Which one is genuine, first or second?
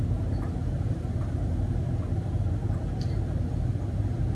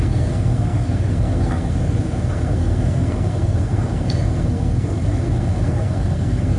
first